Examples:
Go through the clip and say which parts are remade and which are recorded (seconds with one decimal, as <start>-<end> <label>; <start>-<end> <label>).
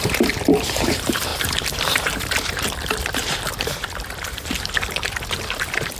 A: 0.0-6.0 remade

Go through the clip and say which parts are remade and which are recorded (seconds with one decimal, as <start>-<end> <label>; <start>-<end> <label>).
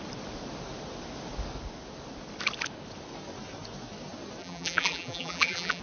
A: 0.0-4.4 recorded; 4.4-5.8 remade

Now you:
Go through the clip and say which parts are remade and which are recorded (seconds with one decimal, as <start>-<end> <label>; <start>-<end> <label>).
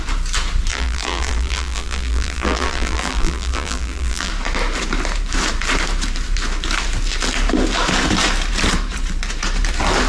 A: 0.0-0.7 recorded; 0.7-4.3 remade; 4.3-10.1 recorded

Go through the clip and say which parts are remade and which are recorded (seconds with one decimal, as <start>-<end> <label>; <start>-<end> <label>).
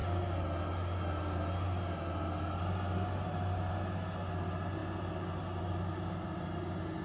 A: 0.0-7.0 recorded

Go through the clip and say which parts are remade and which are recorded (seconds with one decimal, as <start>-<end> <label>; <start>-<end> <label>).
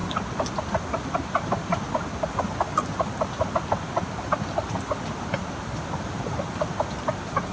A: 0.0-7.5 recorded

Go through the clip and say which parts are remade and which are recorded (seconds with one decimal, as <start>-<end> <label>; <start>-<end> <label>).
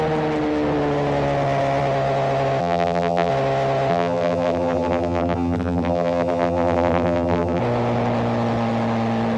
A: 0.0-2.6 recorded; 2.6-3.3 remade; 3.3-3.9 recorded; 3.9-7.6 remade; 7.6-9.4 recorded